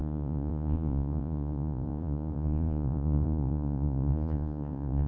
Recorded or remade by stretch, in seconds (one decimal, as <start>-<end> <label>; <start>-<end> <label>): 0.0-5.1 remade